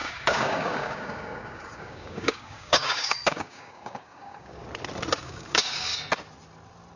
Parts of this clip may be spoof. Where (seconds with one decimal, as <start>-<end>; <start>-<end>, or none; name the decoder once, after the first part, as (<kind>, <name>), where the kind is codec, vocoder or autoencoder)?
0.0-4.6 (codec, DAC); 5.2-5.9